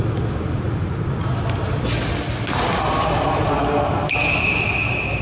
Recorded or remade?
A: recorded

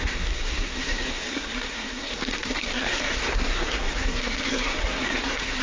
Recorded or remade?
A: remade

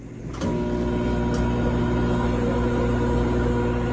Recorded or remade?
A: recorded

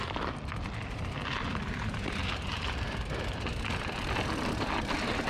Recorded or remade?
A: recorded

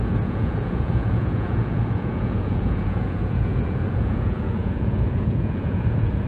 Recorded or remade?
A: remade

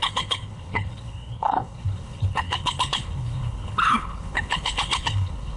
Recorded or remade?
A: remade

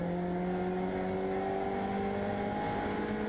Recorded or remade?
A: recorded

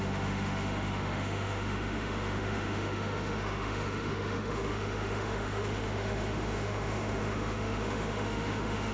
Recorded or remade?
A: remade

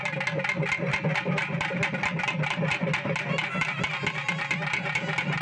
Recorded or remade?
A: recorded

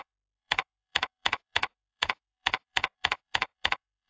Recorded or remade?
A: remade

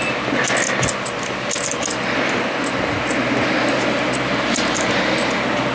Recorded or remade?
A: recorded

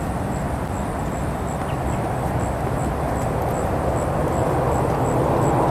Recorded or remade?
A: recorded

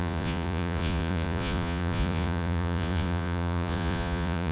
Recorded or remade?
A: remade